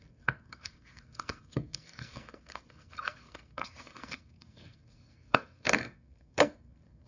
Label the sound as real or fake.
fake